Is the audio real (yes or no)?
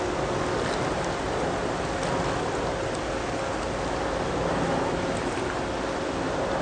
yes